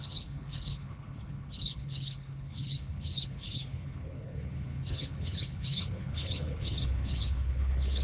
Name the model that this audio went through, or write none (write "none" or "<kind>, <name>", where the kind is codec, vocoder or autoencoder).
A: codec, HILCodec